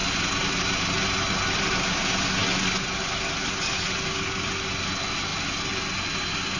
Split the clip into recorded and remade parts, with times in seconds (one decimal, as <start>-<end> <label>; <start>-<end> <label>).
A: 0.0-6.6 recorded